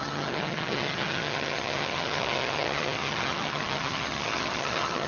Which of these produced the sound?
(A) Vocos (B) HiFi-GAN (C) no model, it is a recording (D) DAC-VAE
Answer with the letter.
B